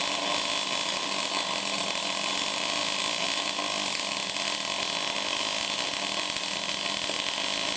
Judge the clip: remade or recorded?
recorded